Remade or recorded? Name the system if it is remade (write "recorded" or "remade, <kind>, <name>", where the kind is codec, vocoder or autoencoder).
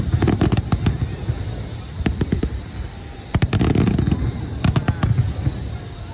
recorded